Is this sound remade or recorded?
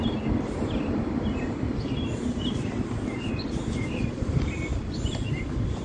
recorded